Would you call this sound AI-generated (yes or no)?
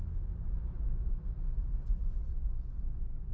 no